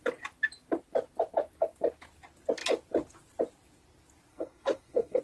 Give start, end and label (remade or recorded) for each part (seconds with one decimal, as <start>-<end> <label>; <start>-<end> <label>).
0.0-4.3 recorded; 4.3-5.2 remade